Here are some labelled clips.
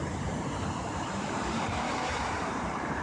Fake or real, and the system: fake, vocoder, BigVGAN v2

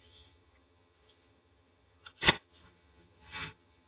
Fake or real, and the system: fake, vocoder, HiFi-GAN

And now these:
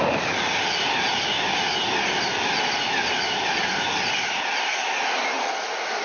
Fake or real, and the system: real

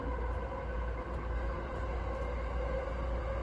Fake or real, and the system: real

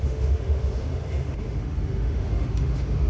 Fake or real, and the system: fake, autoencoder, DAC-VAE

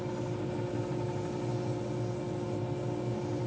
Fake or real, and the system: real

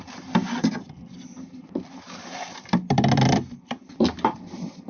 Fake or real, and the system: real